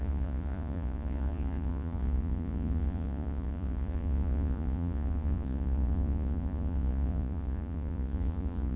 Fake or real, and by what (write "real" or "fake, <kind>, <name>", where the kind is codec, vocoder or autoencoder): fake, vocoder, Vocos